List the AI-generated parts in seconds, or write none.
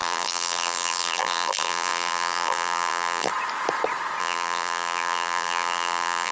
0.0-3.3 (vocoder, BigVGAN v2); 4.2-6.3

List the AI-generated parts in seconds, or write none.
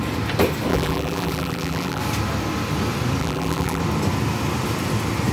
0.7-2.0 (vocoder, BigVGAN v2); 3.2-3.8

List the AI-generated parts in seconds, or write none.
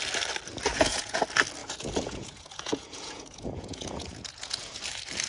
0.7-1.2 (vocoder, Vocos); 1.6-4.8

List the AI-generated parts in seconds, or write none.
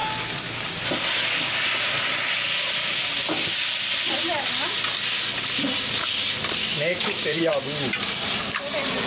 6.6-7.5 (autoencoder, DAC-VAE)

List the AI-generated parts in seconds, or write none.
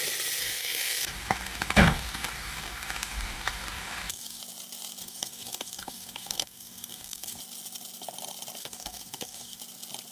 0.4-4.4 (codec, DAC); 5.0-7.4; 8.6-9.6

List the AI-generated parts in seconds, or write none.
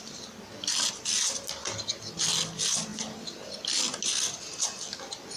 none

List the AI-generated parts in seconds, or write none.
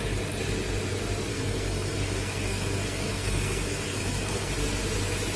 1.3-4.5 (codec, SNAC)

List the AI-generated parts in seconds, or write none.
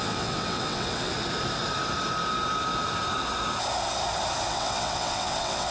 0.0-1.1 (vocoder, WaveNeXt); 4.5-5.7